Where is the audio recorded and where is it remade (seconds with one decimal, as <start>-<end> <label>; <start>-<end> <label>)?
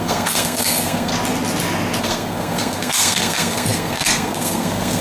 0.0-1.1 remade; 1.1-2.0 recorded; 2.0-5.0 remade